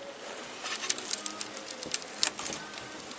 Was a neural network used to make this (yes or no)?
no